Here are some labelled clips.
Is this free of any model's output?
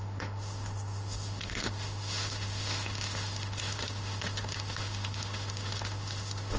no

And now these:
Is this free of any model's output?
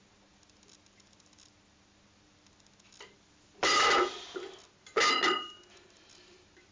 yes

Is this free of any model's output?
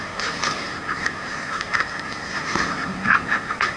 no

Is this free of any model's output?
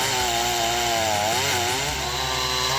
yes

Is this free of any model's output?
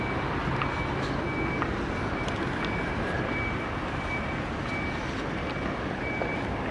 yes